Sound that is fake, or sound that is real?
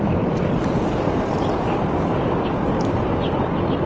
real